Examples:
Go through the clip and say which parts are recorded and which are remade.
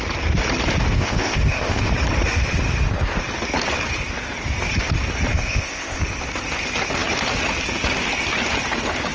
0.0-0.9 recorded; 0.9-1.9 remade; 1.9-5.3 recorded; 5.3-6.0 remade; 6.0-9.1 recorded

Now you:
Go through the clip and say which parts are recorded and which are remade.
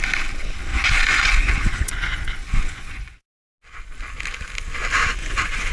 0.0-0.7 recorded; 0.7-3.4 remade; 3.4-5.2 recorded; 5.2-5.7 remade